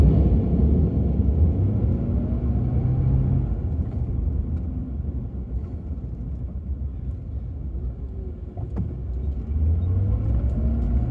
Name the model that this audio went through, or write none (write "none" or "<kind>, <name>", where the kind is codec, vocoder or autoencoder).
none